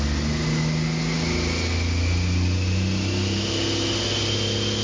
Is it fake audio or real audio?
real